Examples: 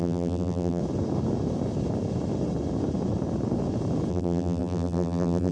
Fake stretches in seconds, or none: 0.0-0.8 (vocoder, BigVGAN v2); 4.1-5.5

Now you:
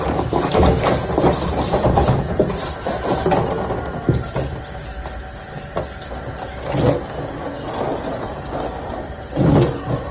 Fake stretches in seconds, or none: 0.5-3.1 (vocoder, BigVGAN v2); 7.9-9.7

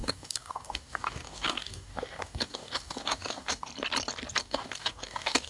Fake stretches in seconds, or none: 0.0-3.7 (codec, DAC); 4.4-5.5